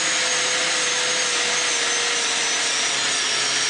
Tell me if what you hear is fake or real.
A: real